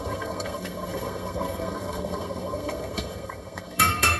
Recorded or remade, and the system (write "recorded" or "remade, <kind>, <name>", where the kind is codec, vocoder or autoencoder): remade, codec, SNAC